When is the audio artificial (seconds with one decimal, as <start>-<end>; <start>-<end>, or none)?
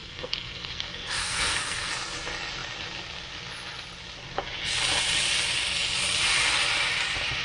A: 0.0-1.9